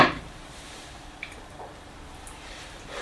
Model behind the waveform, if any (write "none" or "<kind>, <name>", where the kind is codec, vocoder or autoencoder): vocoder, BigVGAN v2